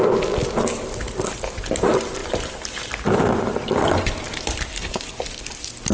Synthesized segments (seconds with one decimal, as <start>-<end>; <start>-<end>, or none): none